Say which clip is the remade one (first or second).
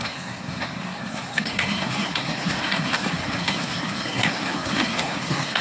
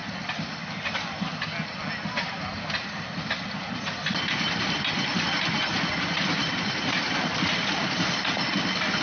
first